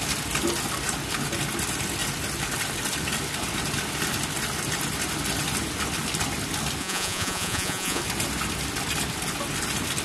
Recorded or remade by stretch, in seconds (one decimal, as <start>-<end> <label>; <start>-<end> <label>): 0.0-6.8 recorded; 6.8-8.0 remade; 8.0-10.0 recorded